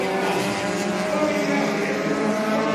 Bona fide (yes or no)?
yes